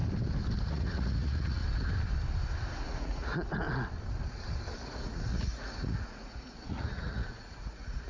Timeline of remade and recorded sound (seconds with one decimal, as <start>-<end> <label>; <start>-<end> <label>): 0.0-0.7 recorded; 0.7-1.6 remade; 1.6-2.8 recorded; 2.8-3.3 remade; 3.3-4.8 recorded; 4.8-8.1 remade